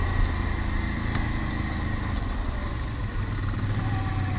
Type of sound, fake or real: real